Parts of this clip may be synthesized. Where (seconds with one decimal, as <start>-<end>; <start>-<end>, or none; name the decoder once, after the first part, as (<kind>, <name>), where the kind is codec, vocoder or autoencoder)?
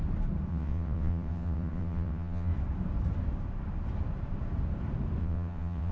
0.5-2.5 (vocoder, WaveNeXt); 5.2-5.9